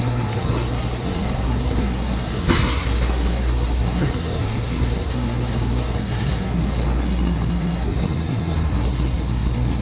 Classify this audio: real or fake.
fake